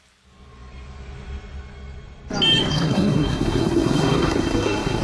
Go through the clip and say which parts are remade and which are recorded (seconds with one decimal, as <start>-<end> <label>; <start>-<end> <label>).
0.0-2.7 recorded; 2.7-5.0 remade